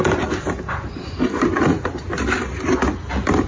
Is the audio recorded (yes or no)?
yes